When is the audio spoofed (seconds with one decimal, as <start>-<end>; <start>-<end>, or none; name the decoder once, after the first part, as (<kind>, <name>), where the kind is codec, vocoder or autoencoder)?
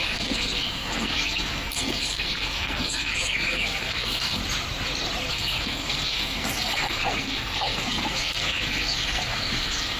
0.0-4.4 (codec, SNAC); 5.3-10.0